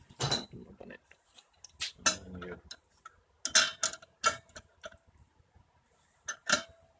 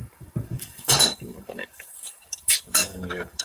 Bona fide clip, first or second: first